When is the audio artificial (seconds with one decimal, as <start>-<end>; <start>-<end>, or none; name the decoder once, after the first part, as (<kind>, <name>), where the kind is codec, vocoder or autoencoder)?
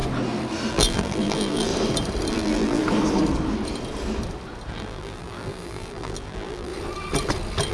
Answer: 0.7-1.7 (vocoder, BigVGAN v2); 2.3-2.8; 4.7-6.7